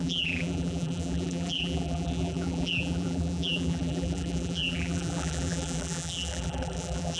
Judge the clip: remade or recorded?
remade